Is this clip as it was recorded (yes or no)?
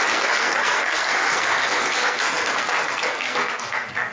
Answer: no